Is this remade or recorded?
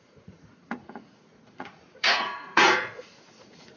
remade